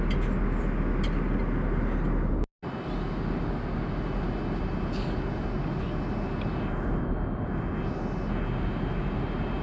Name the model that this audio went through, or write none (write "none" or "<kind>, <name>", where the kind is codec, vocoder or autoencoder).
none